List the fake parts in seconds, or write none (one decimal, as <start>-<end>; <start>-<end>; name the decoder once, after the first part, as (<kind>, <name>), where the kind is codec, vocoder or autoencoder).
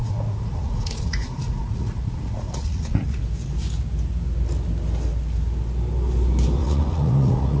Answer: 0.0-3.2 (vocoder, Vocos); 6.6-7.6